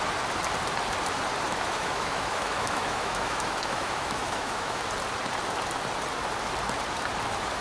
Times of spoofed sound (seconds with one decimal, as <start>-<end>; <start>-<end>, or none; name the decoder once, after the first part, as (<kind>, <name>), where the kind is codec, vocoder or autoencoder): 1.5-4.8 (autoencoder, DAC-VAE)